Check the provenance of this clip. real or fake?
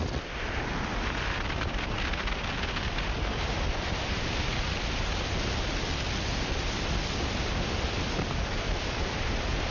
real